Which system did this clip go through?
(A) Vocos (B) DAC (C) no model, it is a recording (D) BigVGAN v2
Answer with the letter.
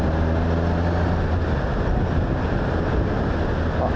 C